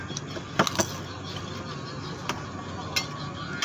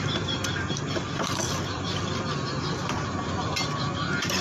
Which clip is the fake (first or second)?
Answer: second